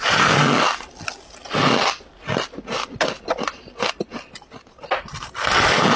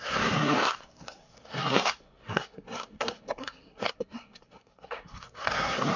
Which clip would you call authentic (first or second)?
first